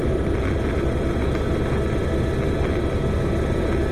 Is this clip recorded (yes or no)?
yes